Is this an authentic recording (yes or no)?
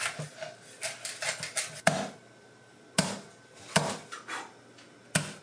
yes